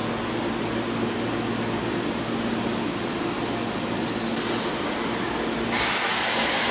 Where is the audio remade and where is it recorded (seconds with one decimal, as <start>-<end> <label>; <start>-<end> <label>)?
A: 0.0-6.7 recorded